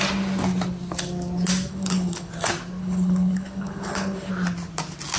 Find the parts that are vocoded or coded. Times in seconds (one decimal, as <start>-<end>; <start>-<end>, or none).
1.7-2.3; 2.8-4.3